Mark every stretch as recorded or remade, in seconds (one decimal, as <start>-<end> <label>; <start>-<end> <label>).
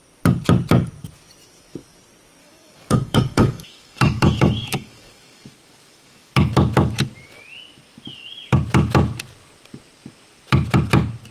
0.0-2.4 recorded; 2.4-6.3 remade; 6.3-11.3 recorded